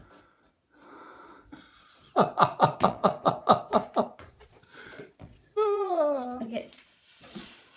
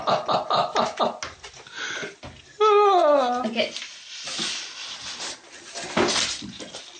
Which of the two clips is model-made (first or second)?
first